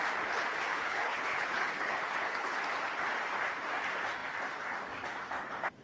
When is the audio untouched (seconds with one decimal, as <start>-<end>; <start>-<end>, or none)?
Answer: 0.0-0.7; 2.6-5.8